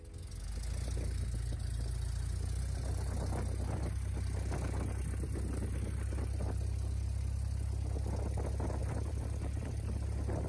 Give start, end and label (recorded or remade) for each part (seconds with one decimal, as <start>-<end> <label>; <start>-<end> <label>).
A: 0.0-8.8 recorded; 8.8-10.5 remade